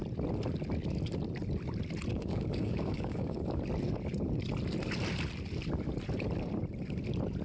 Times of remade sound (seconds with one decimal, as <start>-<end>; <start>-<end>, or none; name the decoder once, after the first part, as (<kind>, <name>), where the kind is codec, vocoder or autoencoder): 2.1-3.6 (codec, DAC)